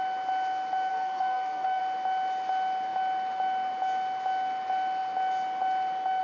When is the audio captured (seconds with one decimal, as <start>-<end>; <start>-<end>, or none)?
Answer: 0.0-0.9; 1.8-6.2